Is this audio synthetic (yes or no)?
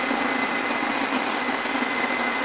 no